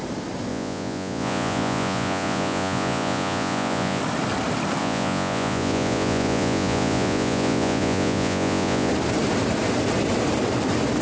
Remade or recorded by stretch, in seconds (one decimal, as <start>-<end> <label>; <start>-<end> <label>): 0.0-0.5 recorded; 0.5-4.0 remade; 4.0-4.8 recorded; 4.8-8.9 remade; 8.9-11.0 recorded